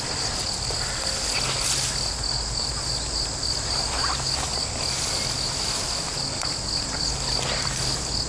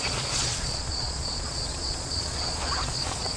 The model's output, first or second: second